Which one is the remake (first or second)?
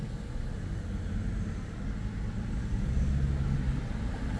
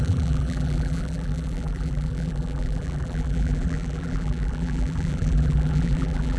second